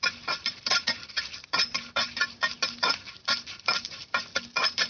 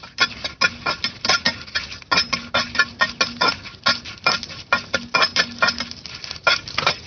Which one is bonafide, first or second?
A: second